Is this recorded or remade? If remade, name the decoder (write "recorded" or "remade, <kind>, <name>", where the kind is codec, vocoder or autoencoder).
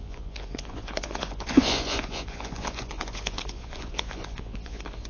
remade, vocoder, Vocos